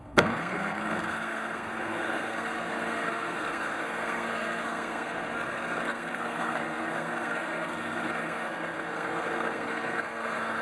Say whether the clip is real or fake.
fake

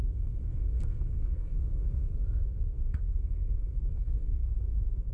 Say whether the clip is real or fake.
fake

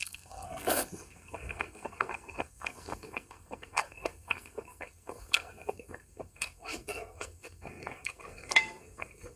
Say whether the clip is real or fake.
fake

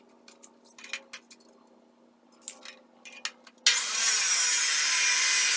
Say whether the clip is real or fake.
real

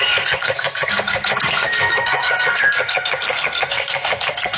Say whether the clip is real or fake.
fake